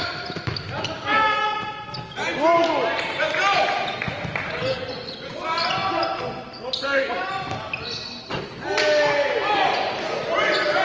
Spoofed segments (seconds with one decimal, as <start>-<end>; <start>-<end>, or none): 5.8-6.7